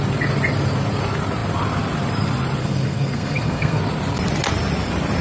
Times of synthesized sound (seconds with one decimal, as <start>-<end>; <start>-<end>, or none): 2.6-3.8